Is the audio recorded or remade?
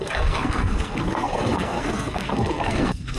remade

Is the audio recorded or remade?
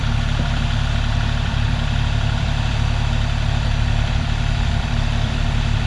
remade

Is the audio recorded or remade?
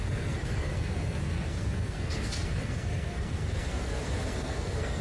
remade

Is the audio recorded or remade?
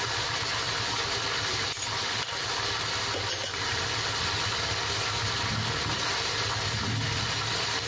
recorded